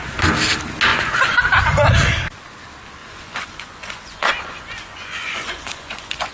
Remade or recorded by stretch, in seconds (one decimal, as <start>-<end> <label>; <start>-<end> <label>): 0.0-0.9 recorded; 0.9-1.4 remade; 1.4-3.0 recorded; 3.0-6.3 remade